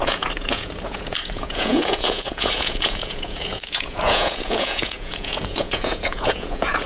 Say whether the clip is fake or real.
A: fake